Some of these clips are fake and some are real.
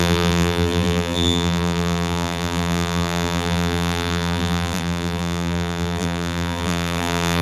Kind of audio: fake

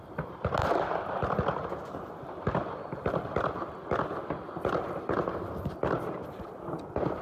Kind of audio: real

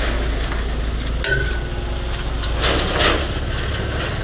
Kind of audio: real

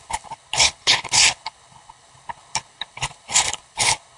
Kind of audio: fake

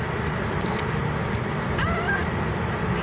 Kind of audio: real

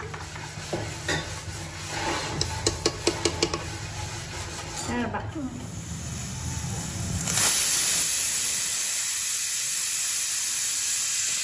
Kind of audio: real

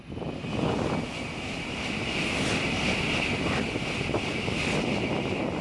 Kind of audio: real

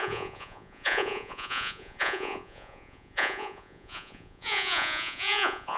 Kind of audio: fake